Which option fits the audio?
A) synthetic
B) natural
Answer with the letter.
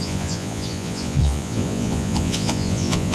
A